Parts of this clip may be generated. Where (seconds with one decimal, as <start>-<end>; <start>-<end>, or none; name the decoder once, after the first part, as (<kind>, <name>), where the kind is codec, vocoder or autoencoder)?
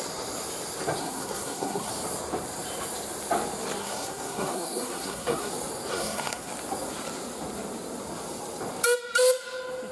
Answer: 1.0-1.9 (codec, SNAC); 3.8-5.5; 5.9-6.5